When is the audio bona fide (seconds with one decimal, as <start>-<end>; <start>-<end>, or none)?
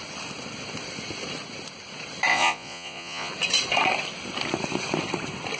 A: 0.0-2.3; 3.3-5.6